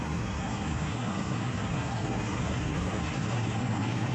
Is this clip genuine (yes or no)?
no